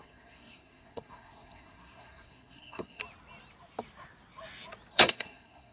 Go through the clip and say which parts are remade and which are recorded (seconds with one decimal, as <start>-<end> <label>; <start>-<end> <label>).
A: 0.0-3.0 remade; 3.0-4.9 recorded; 4.9-5.7 remade

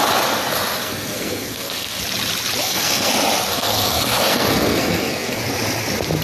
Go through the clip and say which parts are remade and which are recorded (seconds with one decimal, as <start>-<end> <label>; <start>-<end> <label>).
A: 0.0-0.8 recorded; 0.8-2.0 remade; 2.0-2.6 recorded; 2.6-3.1 remade; 3.1-3.5 recorded; 3.5-5.4 remade; 5.4-6.2 recorded